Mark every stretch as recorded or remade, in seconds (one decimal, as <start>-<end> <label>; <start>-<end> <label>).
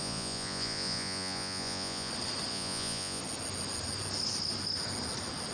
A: 0.0-2.1 remade; 2.1-2.5 recorded; 2.5-3.2 remade; 3.2-5.5 recorded